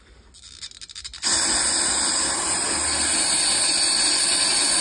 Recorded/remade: recorded